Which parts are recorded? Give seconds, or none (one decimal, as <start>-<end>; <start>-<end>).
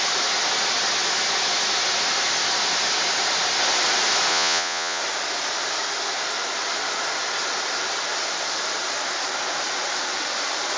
0.0-4.3; 5.0-10.8